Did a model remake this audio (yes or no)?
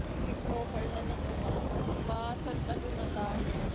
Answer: yes